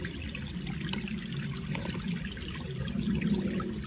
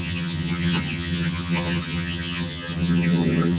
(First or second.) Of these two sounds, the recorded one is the first